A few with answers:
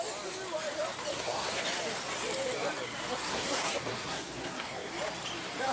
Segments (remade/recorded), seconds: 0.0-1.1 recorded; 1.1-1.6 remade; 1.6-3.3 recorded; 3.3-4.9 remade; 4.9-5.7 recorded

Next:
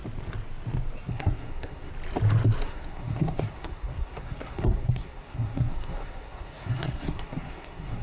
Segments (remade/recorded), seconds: 0.0-1.1 recorded; 1.1-1.9 remade; 1.9-2.6 recorded; 2.6-8.0 remade

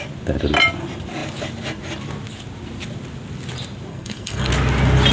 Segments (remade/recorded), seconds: 0.0-3.9 recorded; 3.9-4.5 remade; 4.5-5.1 recorded

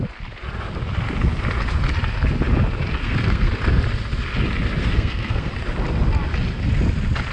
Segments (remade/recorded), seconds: 0.0-3.0 recorded; 3.0-3.5 remade; 3.5-4.8 recorded; 4.8-5.5 remade; 5.5-7.3 recorded

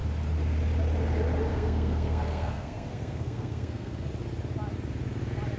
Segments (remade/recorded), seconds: 0.0-1.5 recorded; 1.5-4.1 remade; 4.1-5.6 recorded

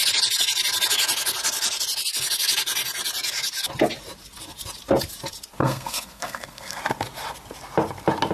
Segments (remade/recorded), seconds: 0.0-5.6 recorded; 5.6-6.8 remade; 6.8-8.3 recorded